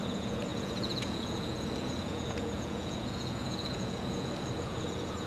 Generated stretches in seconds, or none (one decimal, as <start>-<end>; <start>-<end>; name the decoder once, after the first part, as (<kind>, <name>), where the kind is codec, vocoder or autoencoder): 0.0-5.3 (vocoder, Vocos)